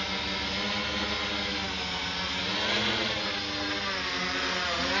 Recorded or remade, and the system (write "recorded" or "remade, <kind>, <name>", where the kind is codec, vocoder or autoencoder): recorded